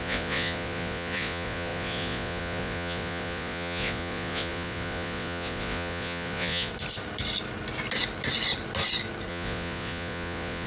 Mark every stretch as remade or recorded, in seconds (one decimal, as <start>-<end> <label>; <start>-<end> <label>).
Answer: 0.0-6.7 remade; 6.7-9.3 recorded; 9.3-10.7 remade